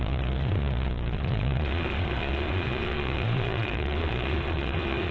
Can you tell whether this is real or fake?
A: fake